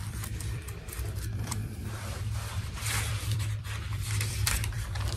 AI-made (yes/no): yes